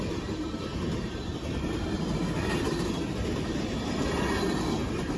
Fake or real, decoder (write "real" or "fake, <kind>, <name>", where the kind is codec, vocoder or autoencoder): real